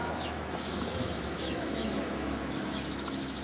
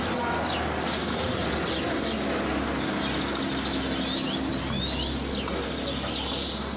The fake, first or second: first